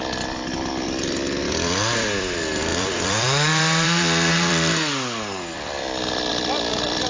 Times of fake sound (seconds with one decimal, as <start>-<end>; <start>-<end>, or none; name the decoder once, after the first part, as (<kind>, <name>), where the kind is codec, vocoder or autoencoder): 0.0-7.1 (vocoder, BigVGAN v2)